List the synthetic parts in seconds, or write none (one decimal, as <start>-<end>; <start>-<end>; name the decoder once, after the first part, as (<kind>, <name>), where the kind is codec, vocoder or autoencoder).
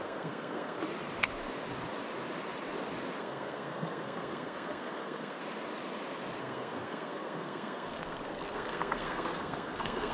0.0-0.8 (codec, SNAC); 3.2-5.4; 6.4-10.1